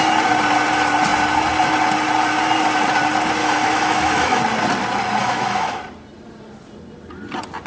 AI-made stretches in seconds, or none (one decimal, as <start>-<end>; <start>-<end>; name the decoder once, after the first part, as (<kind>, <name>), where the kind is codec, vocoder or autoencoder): 3.4-4.4 (autoencoder, DAC-VAE); 5.2-5.8